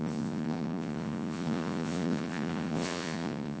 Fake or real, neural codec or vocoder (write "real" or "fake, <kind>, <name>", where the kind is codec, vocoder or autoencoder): fake, vocoder, Vocos